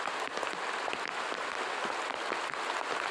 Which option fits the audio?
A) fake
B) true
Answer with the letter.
B